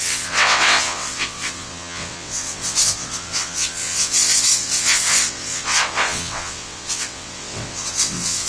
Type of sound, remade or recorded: remade